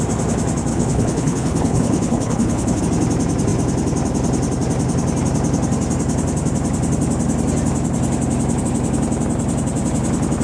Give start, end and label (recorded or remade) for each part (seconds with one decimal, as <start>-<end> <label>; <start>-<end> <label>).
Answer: 0.0-0.7 recorded; 0.7-2.8 remade; 2.8-10.4 recorded